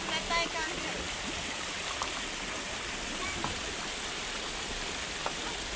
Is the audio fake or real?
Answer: real